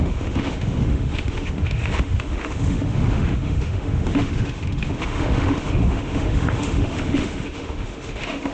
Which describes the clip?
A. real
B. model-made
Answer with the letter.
B